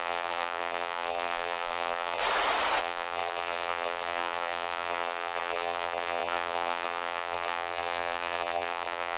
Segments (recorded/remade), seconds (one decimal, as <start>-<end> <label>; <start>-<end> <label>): 0.0-2.2 remade; 2.2-2.8 recorded; 2.8-9.2 remade

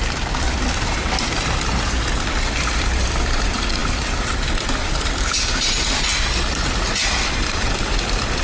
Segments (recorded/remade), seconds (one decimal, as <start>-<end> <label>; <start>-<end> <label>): 0.0-6.1 remade; 6.1-7.0 recorded; 7.0-8.4 remade

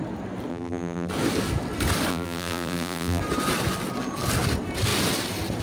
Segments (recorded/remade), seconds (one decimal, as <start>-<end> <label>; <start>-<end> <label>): 0.0-0.5 recorded; 0.5-1.1 remade; 1.1-2.1 recorded; 2.1-3.2 remade; 3.2-5.6 recorded

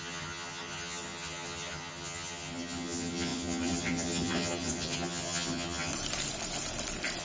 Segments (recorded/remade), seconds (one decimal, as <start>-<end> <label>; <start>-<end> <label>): 0.0-5.9 remade; 5.9-7.2 recorded

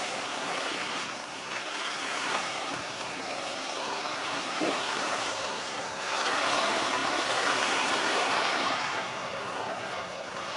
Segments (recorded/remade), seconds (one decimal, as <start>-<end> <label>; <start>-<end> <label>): 0.0-10.6 remade

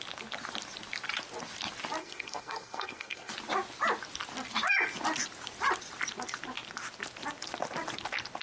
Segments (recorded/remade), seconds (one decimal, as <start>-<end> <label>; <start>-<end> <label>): 0.0-2.0 recorded; 2.0-3.3 remade; 3.3-8.4 recorded

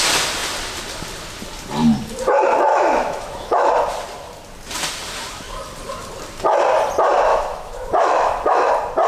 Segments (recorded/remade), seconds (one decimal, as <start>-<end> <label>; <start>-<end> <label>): 0.0-2.7 recorded; 2.7-3.7 remade; 3.7-7.3 recorded; 7.3-8.7 remade; 8.7-9.1 recorded